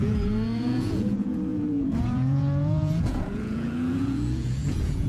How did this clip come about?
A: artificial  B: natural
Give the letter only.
A